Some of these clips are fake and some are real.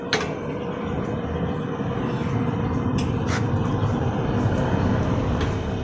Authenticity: real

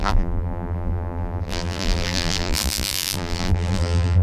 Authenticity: fake